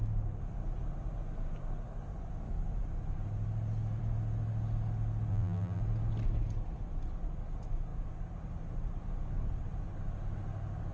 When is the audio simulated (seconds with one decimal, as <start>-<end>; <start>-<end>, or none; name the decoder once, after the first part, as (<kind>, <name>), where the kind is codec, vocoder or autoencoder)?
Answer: 5.3-5.8 (vocoder, BigVGAN v2)